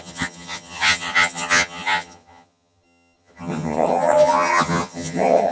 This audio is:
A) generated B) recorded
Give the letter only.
A